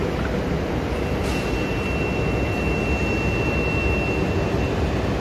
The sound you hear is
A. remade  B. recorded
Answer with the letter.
B